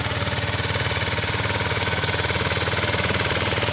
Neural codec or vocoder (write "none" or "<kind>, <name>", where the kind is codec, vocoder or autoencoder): vocoder, Vocos